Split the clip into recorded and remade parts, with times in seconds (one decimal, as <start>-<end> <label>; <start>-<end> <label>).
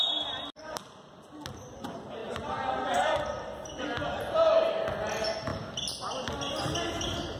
0.0-7.4 recorded